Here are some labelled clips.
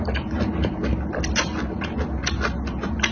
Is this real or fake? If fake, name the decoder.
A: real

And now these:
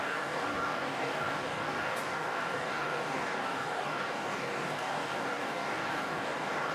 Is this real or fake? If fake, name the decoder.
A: fake, codec, DAC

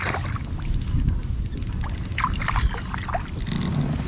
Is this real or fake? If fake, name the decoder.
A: real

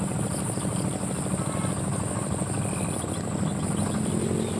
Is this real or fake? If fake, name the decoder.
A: real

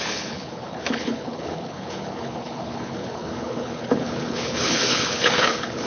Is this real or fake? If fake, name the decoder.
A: fake, codec, HILCodec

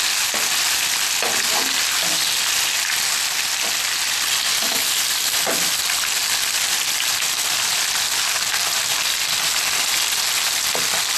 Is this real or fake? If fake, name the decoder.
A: real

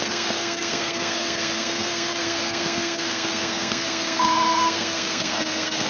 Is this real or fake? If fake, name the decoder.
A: fake, codec, SNAC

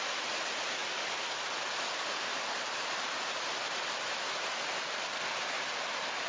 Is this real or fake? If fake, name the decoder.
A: real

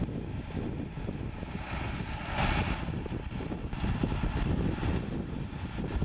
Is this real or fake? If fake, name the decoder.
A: real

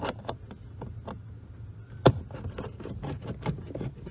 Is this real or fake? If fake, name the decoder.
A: real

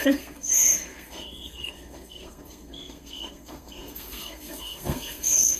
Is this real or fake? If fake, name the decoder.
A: fake, codec, SNAC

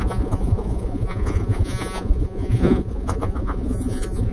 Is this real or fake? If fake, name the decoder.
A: fake, vocoder, Vocos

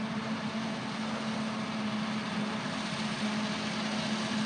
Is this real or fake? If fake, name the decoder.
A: real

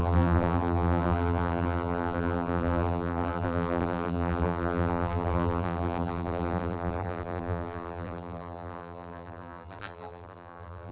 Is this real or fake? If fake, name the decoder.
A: fake, vocoder, BigVGAN v2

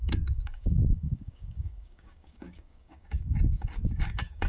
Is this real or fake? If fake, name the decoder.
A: fake, codec, DAC